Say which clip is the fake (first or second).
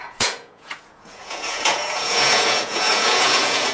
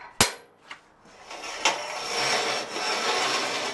first